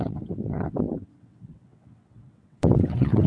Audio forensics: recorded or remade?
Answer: remade